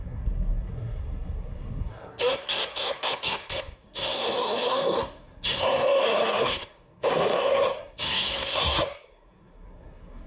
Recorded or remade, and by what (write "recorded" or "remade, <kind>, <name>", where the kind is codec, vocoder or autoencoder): remade, codec, SNAC